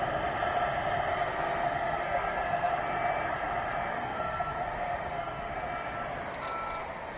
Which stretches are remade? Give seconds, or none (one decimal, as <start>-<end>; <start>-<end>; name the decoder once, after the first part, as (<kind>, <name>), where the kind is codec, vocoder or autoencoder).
1.1-2.7 (codec, SNAC); 3.9-5.6